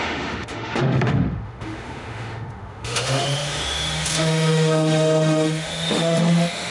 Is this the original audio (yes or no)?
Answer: no